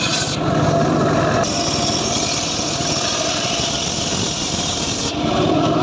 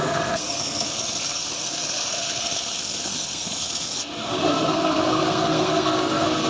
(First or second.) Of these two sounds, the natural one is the first